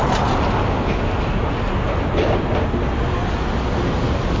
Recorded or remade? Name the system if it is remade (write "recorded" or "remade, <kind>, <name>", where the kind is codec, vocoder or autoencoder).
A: recorded